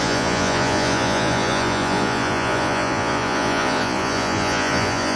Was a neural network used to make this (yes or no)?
yes